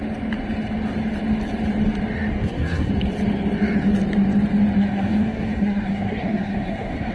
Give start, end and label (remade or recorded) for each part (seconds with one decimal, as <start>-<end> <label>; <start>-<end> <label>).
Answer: 0.0-2.3 recorded; 2.3-2.9 remade; 2.9-4.8 recorded; 4.8-7.1 remade